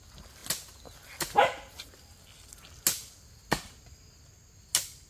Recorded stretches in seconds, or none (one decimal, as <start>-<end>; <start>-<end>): 0.0-5.1